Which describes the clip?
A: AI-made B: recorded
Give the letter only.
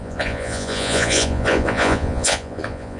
A